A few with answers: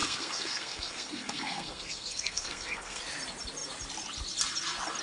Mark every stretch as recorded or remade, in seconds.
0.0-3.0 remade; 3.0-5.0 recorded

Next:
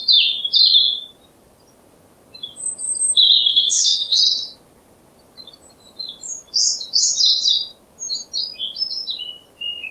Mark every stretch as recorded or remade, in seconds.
0.0-3.5 recorded; 3.5-4.2 remade; 4.2-9.9 recorded